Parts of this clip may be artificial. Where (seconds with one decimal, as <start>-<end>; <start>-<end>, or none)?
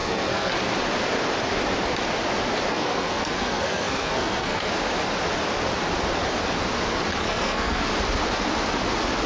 0.0-0.5; 2.7-4.7; 7.2-7.9